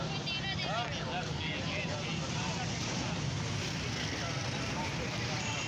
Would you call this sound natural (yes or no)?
yes